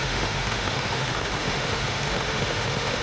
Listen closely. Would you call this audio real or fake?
fake